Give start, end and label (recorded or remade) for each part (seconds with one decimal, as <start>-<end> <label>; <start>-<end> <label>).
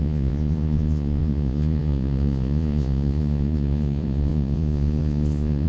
0.0-5.7 remade